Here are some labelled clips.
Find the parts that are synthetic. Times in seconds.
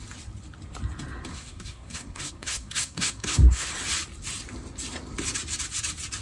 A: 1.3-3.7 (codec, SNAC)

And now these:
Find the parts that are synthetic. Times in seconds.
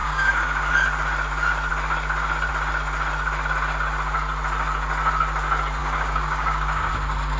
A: 0.0-0.7 (codec, DAC); 5.8-6.9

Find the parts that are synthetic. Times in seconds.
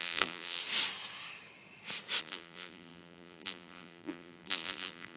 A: 0.0-0.6 (vocoder, BigVGAN v2); 2.2-5.2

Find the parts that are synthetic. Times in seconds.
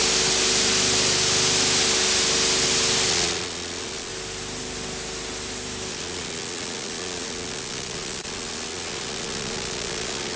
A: 3.1-4.1 (vocoder, Vocos); 5.9-10.4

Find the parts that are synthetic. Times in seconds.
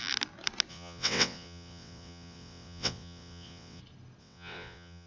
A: 0.7-3.8 (vocoder, WaveNeXt); 4.2-5.1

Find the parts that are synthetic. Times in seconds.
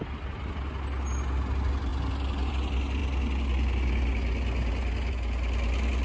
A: none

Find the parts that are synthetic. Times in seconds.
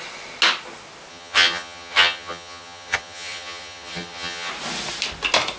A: 1.1-4.5 (vocoder, HiFi-GAN)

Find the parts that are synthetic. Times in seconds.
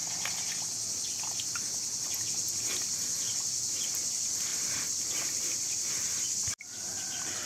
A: 3.9-7.5 (vocoder, BigVGAN v2)